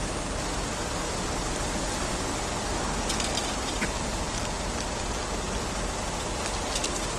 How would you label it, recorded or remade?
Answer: recorded